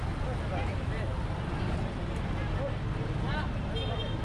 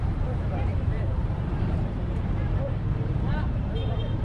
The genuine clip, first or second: first